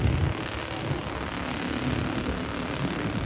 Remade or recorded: recorded